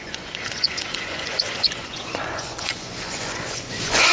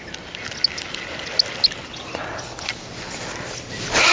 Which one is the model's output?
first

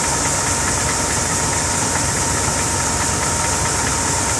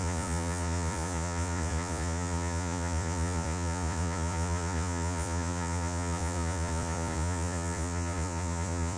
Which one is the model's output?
second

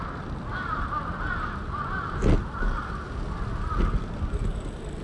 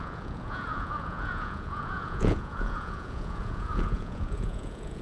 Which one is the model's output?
second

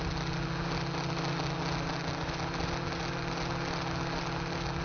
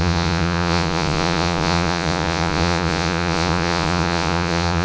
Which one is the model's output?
second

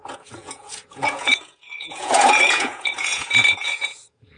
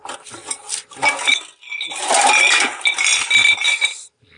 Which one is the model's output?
first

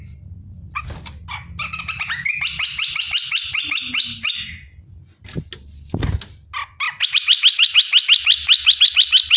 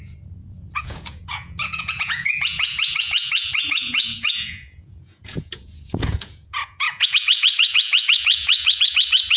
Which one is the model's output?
second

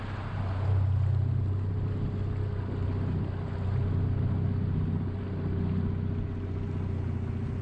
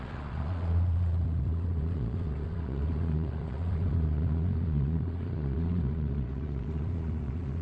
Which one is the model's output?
second